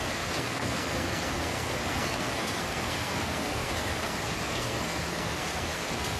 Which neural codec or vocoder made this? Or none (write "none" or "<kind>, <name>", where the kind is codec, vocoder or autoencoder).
codec, SNAC